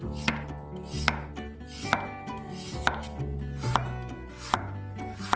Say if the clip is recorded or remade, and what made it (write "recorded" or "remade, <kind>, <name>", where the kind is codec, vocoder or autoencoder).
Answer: recorded